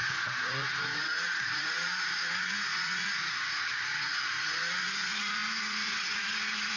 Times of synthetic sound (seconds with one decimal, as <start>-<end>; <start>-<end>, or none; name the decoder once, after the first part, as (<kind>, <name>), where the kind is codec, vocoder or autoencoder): 0.0-6.8 (vocoder, Vocos)